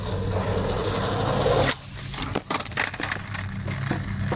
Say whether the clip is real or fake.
real